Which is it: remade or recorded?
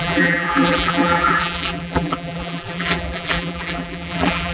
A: remade